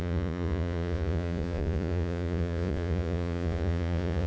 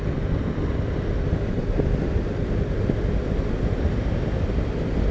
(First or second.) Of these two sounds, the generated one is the first